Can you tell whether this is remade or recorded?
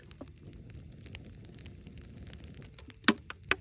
recorded